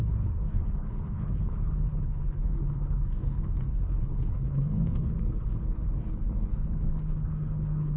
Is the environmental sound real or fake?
fake